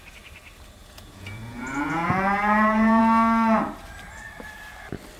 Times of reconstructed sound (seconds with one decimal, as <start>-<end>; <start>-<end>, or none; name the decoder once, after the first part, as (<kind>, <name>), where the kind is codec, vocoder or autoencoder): 0.8-3.0 (vocoder, Vocos)